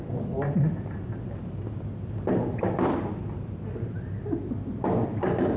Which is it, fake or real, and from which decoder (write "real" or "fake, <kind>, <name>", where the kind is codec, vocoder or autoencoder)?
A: real